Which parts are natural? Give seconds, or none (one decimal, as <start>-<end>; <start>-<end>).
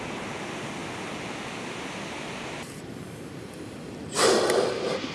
0.0-5.1